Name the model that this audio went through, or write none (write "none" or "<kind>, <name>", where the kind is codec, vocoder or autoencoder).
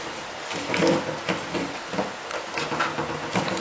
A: none